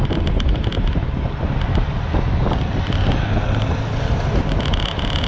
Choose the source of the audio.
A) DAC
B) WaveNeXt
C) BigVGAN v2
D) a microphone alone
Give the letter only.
D